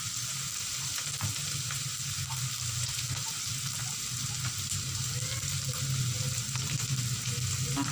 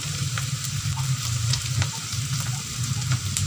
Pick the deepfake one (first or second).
second